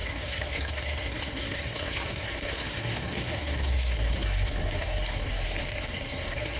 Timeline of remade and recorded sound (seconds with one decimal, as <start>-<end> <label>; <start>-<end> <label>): 0.0-6.6 remade